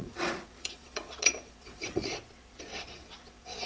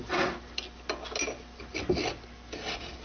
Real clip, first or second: second